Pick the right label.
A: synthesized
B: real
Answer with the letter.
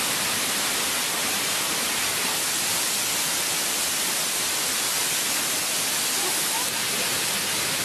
B